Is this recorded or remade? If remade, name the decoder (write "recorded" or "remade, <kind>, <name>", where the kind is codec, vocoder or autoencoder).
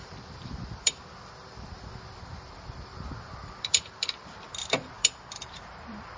remade, vocoder, BigVGAN v2